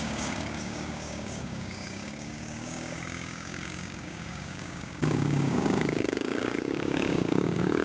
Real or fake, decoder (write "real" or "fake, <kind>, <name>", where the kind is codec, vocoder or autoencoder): fake, codec, DAC